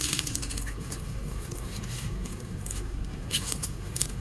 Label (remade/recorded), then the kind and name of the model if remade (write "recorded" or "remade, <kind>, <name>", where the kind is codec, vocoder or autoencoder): remade, codec, SNAC